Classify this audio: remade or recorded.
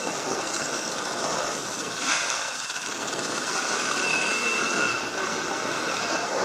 remade